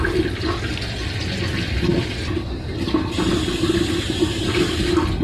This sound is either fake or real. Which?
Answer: real